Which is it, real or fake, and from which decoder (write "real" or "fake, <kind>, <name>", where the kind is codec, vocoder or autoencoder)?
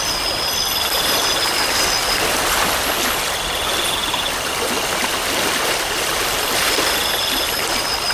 real